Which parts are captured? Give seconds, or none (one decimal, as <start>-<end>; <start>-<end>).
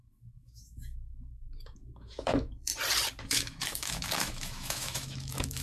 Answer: 2.7-3.2